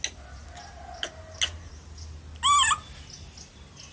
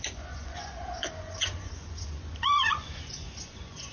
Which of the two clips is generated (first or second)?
second